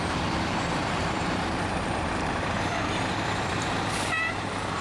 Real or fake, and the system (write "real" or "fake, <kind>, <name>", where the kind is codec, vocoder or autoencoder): fake, vocoder, BigVGAN v2